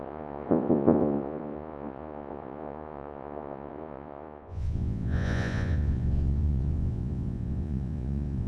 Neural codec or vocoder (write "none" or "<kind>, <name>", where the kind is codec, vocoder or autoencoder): vocoder, Vocos